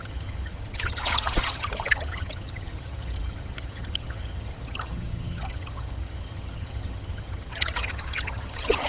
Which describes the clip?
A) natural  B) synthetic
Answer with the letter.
B